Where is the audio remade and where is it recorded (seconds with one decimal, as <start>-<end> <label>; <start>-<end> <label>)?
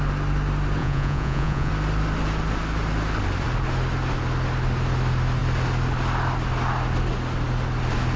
0.0-0.8 recorded; 0.8-1.7 remade; 1.7-8.2 recorded